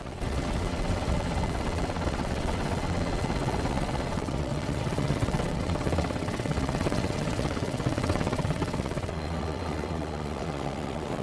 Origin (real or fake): fake